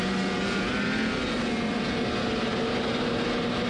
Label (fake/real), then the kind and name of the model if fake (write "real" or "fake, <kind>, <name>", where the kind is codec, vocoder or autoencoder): real